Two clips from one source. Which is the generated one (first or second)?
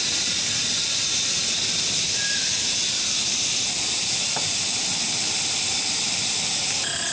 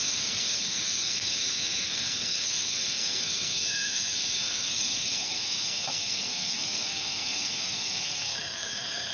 second